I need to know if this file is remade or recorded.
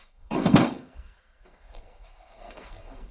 remade